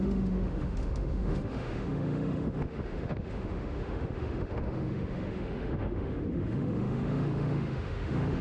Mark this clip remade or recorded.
remade